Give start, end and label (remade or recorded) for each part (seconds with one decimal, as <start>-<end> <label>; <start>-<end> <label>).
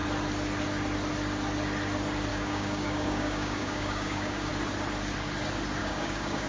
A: 0.0-2.3 recorded; 2.3-4.5 remade; 4.5-5.8 recorded; 5.8-6.5 remade